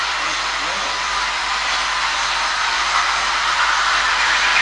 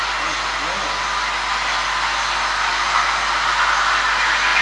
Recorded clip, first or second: second